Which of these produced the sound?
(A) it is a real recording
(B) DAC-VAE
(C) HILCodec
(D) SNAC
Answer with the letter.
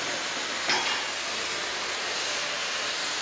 A